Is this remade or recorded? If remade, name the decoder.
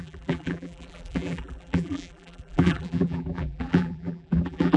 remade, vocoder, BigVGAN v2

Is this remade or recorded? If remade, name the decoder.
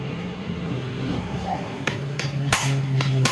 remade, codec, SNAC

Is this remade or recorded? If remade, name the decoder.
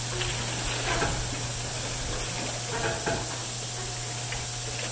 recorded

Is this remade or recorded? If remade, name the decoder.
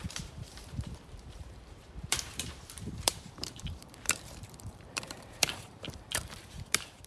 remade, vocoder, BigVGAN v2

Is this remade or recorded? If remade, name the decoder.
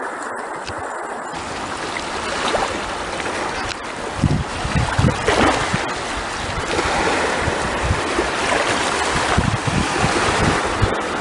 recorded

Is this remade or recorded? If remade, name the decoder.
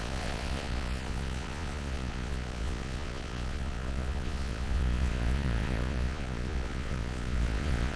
remade, vocoder, Vocos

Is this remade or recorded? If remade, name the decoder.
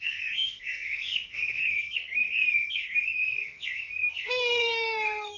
remade, codec, SNAC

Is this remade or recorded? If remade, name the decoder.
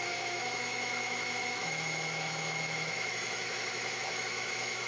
remade, autoencoder, DAC-VAE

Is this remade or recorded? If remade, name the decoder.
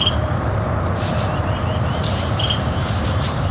remade, vocoder, BigVGAN v2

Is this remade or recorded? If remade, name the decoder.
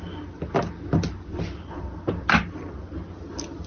recorded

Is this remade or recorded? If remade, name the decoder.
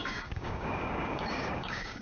remade, codec, DAC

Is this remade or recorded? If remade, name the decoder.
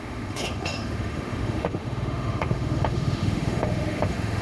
remade, autoencoder, DAC-VAE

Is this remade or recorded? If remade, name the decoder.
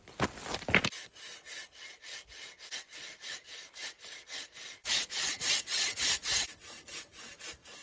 recorded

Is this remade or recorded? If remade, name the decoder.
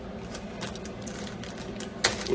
recorded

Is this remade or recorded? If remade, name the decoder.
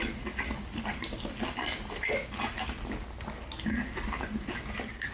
recorded